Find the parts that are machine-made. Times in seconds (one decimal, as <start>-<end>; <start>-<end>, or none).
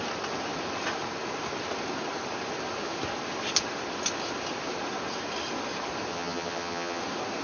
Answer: 6.1-7.0